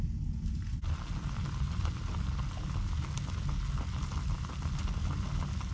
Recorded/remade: recorded